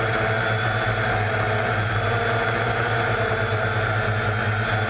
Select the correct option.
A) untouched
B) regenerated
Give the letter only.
A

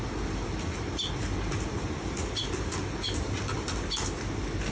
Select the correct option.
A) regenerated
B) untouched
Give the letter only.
B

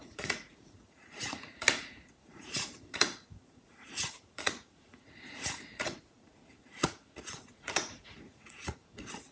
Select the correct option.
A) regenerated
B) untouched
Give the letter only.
A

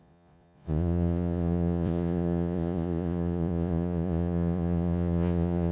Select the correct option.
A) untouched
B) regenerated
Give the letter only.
B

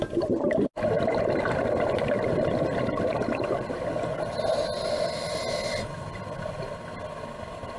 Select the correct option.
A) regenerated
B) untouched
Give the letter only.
B